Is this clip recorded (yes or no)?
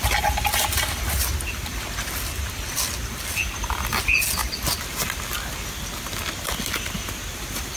yes